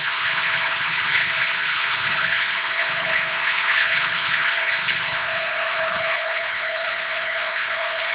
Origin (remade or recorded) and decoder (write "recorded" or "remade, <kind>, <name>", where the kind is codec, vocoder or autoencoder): remade, codec, HILCodec